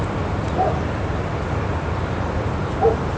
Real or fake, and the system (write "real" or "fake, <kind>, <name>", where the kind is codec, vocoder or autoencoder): real